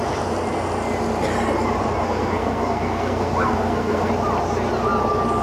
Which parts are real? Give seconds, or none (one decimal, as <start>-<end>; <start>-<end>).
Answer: 0.0-2.0; 4.1-5.4